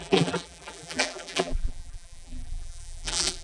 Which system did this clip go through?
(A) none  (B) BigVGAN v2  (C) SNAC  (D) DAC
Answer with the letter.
B